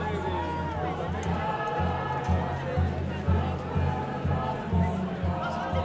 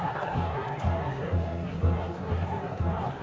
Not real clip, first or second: second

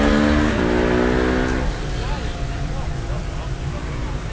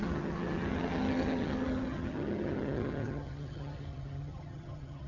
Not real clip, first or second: second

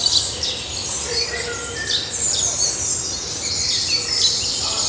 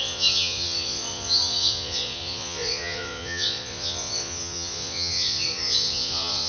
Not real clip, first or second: second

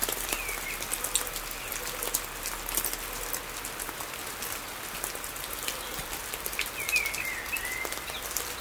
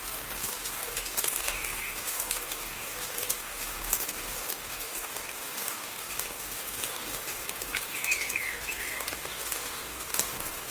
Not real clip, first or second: second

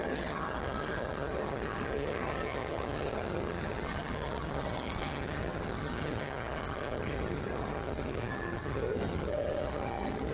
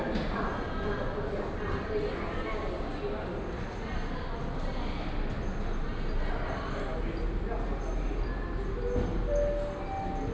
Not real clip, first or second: first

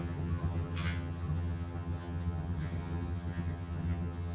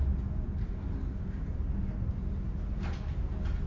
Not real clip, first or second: first